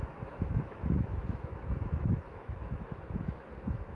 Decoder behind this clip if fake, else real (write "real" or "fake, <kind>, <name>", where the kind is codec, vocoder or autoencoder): fake, autoencoder, DAC-VAE